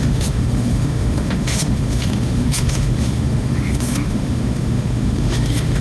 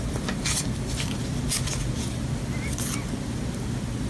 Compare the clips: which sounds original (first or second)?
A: second